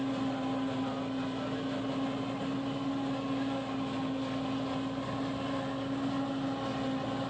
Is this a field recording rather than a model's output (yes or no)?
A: yes